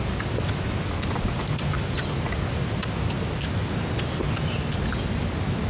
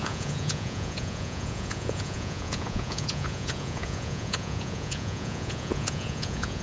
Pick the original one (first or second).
first